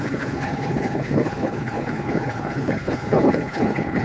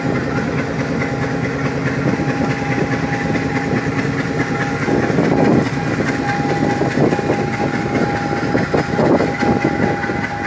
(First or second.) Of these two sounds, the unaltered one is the second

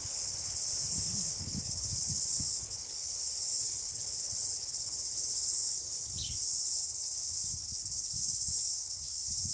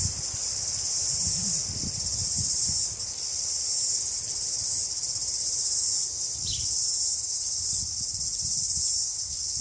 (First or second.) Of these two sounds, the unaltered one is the second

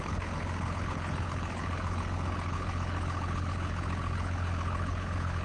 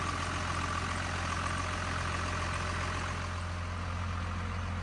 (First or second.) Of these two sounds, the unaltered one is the second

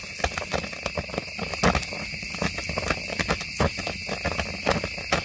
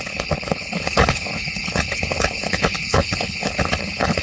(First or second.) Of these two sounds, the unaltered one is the first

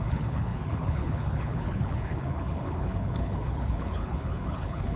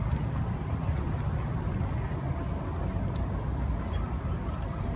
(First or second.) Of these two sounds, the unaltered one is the second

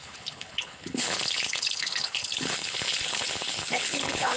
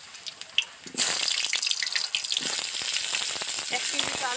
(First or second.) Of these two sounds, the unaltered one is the second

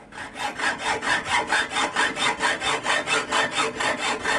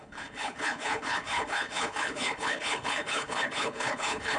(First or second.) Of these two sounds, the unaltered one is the first